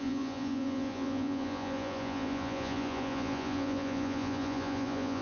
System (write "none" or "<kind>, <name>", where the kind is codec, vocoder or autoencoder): vocoder, Vocos